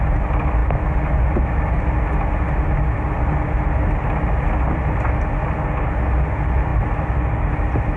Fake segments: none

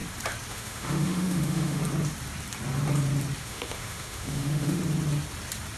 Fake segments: 0.5-1.8; 3.4-4.8

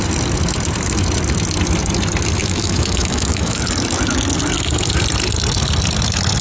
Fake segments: 2.4-3.6

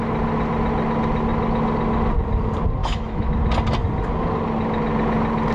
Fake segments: 2.8-3.3

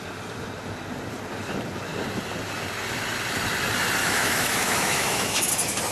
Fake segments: 4.0-5.5